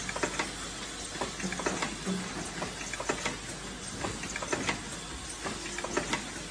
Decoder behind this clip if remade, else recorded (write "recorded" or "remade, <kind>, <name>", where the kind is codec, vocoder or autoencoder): recorded